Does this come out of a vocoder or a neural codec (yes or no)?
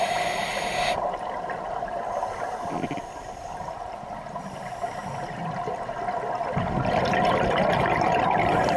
no